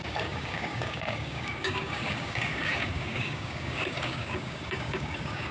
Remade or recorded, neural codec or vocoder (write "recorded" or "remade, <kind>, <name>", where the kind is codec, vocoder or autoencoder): remade, codec, DAC